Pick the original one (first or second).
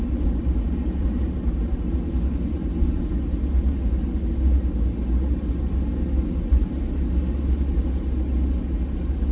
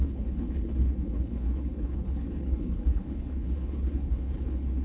first